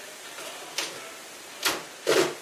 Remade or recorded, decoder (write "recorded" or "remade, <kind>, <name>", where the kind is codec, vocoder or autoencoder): remade, vocoder, BigVGAN v2